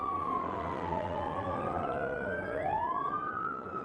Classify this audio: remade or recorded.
remade